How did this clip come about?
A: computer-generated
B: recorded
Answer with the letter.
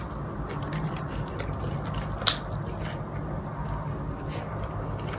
B